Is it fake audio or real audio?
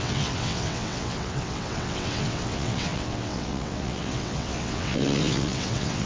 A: fake